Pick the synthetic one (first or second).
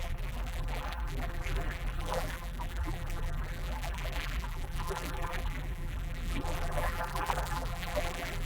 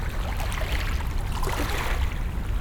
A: first